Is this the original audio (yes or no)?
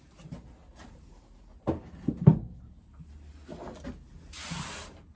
yes